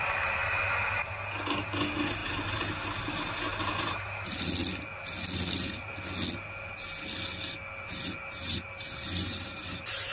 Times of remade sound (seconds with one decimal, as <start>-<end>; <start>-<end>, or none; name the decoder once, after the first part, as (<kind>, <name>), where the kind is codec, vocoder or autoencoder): none